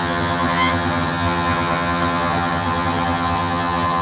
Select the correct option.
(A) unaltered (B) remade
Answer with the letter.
B